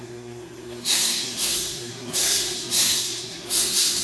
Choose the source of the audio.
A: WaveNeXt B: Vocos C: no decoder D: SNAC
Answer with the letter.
D